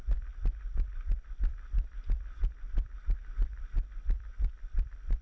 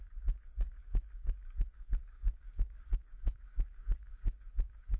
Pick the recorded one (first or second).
first